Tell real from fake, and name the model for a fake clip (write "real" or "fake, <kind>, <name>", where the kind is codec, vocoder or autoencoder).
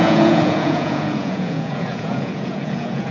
fake, vocoder, Vocos